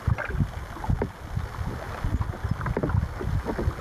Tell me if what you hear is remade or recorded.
recorded